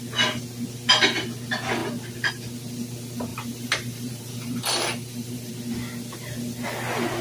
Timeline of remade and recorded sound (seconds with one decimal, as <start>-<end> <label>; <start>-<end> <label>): 0.0-3.3 recorded; 3.3-5.5 remade; 5.5-7.2 recorded